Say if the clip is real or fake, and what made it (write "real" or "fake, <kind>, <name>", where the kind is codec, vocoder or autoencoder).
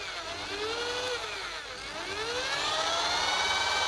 real